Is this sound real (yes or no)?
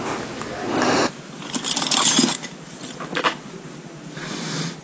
yes